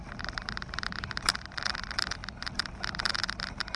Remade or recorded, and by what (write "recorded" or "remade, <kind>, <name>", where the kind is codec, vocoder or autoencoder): recorded